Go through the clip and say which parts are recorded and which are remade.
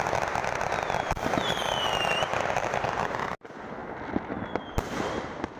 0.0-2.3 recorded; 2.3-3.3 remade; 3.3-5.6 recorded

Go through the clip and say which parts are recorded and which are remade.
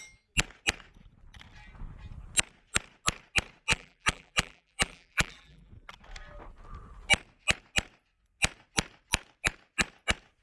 0.0-3.7 recorded; 3.7-5.7 remade; 5.7-10.4 recorded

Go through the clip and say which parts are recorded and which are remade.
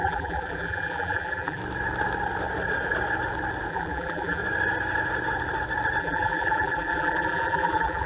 0.0-1.6 remade; 1.6-3.7 recorded; 3.7-4.4 remade; 4.4-6.0 recorded; 6.0-8.1 remade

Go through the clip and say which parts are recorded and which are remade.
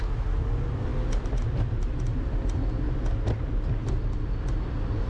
0.0-5.1 recorded